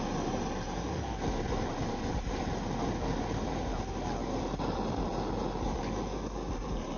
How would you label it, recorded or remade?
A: recorded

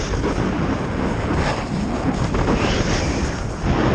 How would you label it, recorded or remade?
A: recorded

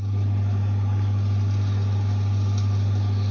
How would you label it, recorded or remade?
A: recorded